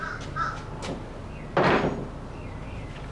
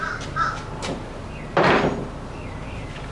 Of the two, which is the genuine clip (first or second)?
first